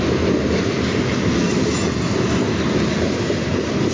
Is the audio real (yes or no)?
yes